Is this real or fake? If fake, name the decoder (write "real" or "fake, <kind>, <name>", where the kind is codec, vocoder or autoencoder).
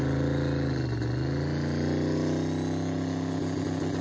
real